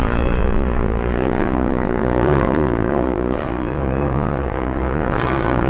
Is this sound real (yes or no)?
no